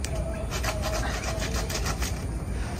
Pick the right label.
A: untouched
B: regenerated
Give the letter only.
A